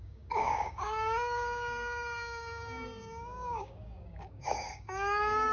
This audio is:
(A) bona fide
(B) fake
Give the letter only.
B